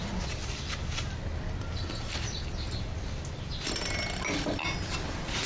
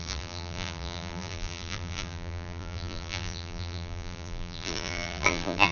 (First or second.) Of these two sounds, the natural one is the first